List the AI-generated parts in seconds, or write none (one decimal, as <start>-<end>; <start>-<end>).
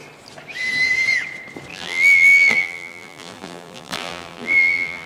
1.7-5.1